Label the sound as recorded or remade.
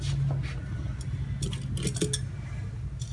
recorded